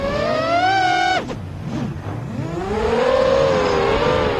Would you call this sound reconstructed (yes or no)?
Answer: no